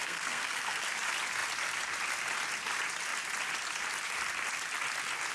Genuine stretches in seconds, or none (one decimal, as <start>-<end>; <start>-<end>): 0.8-5.3